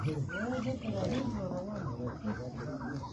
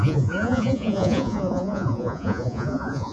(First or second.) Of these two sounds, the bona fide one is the first